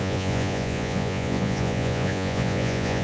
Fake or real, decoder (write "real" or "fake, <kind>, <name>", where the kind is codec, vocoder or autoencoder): fake, vocoder, Vocos